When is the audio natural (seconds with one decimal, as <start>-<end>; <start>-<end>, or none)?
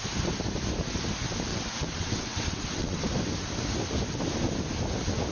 0.0-1.5; 3.0-5.3